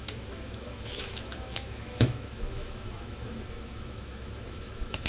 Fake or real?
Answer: fake